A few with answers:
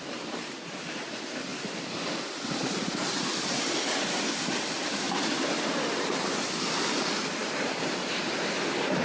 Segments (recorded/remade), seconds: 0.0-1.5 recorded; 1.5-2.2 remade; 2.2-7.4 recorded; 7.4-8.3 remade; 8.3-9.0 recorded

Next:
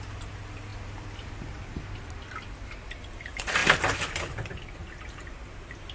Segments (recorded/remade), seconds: 0.0-0.7 remade; 0.7-3.1 recorded; 3.1-4.8 remade; 4.8-5.4 recorded; 5.4-5.9 remade

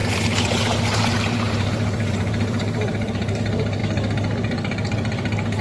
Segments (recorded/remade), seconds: 0.0-3.8 remade; 3.8-5.6 recorded

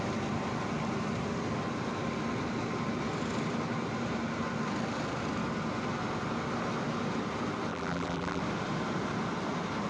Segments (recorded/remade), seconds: 0.0-7.7 recorded; 7.7-8.4 remade; 8.4-9.9 recorded

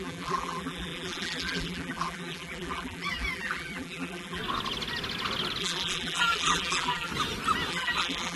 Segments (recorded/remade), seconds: 0.0-4.4 remade; 4.4-5.6 recorded; 5.6-7.1 remade; 7.1-7.7 recorded; 7.7-8.4 remade

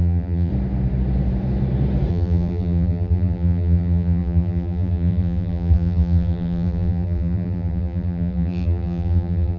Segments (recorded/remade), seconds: 0.0-0.5 remade; 0.5-2.1 recorded; 2.1-9.6 remade